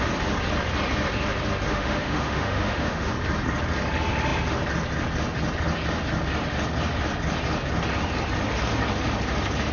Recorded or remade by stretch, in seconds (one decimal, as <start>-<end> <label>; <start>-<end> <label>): 0.0-1.7 recorded; 1.7-3.1 remade; 3.1-9.7 recorded